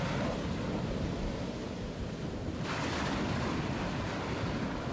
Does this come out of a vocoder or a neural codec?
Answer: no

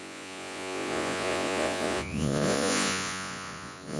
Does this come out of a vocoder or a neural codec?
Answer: yes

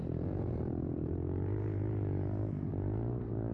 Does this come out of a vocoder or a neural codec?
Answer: yes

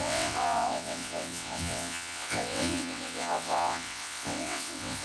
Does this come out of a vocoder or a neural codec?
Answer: yes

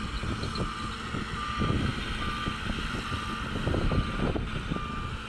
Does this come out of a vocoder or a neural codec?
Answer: no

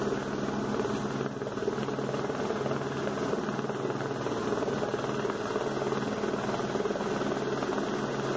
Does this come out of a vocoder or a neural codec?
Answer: no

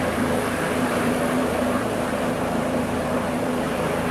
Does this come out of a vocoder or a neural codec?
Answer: yes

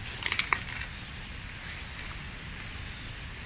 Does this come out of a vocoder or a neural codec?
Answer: no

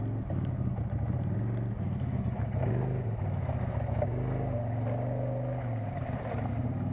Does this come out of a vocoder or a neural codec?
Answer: no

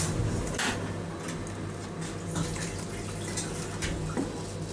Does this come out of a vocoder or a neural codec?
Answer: no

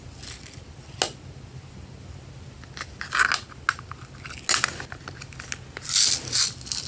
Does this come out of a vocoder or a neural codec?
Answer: no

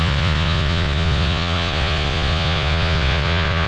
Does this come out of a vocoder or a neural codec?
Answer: yes